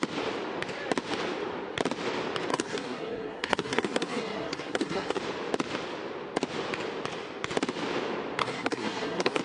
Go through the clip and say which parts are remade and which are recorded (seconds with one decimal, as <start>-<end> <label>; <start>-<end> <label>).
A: 0.0-2.5 recorded; 2.5-5.2 remade; 5.2-8.4 recorded; 8.4-9.4 remade